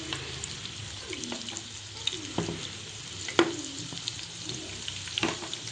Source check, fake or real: real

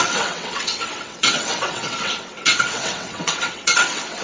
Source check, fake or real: fake